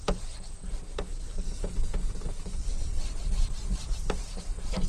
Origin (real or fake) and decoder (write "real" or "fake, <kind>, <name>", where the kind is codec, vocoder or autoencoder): real